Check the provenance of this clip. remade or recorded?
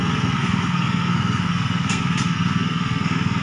remade